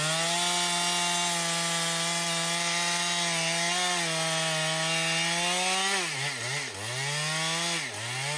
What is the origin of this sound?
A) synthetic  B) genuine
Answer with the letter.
B